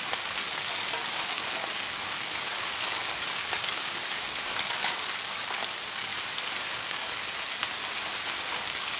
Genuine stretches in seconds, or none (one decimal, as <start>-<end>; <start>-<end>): 6.1-6.7; 7.6-8.6